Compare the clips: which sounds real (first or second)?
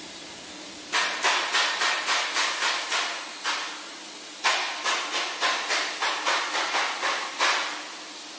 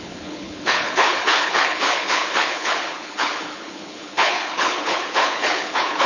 first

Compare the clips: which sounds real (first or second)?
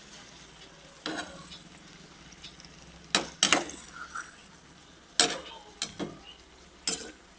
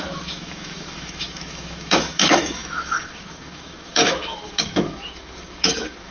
first